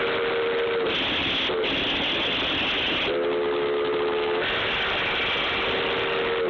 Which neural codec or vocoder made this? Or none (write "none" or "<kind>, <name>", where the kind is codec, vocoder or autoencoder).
none